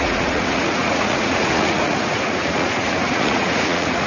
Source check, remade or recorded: remade